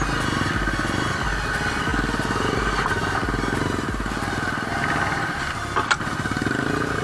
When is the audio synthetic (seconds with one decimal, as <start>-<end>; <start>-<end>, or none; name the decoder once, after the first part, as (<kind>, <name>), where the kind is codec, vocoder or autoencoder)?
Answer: none